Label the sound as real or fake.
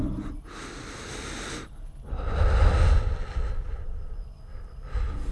real